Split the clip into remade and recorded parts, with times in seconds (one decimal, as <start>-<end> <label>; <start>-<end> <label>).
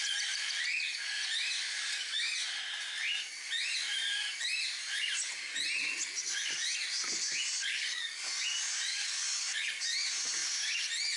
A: 0.0-7.7 recorded; 7.7-8.4 remade; 8.4-8.9 recorded; 8.9-9.7 remade; 9.7-11.2 recorded